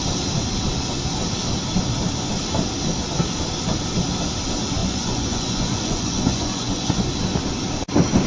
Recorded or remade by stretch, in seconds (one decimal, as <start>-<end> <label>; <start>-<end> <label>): 0.0-4.8 recorded; 4.8-7.1 remade; 7.1-8.3 recorded